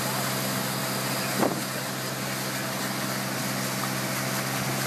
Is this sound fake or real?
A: real